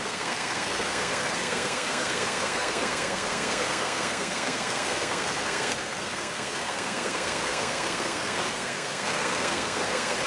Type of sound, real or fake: fake